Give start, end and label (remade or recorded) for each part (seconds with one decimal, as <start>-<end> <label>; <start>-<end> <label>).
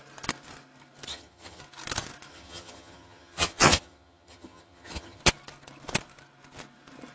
0.0-1.1 recorded; 1.1-1.6 remade; 1.6-2.3 recorded; 2.3-5.2 remade; 5.2-7.1 recorded